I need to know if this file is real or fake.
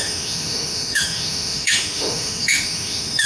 fake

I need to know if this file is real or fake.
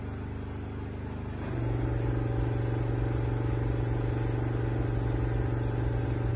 real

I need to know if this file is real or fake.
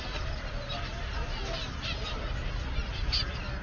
real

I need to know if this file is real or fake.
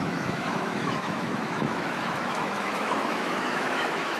fake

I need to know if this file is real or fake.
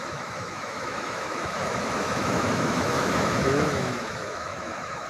fake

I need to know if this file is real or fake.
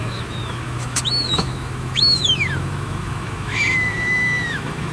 fake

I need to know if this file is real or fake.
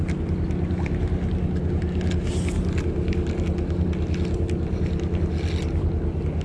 real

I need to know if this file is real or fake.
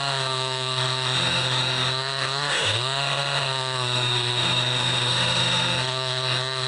fake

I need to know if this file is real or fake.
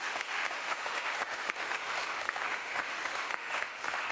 fake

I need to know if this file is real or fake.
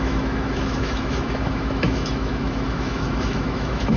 fake